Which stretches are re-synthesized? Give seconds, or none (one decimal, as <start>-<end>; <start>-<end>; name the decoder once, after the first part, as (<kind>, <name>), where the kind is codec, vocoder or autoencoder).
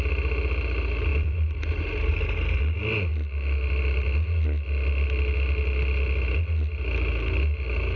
1.1-2.1 (vocoder, BigVGAN v2)